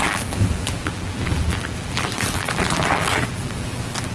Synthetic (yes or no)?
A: yes